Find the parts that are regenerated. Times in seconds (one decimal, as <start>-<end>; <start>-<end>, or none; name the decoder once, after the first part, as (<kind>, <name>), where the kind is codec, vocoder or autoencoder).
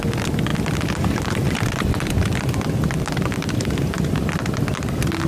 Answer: none